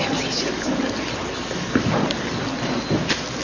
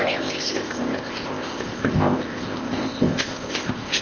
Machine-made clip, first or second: second